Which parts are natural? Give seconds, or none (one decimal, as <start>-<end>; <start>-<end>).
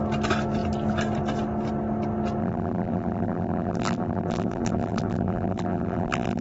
0.0-2.4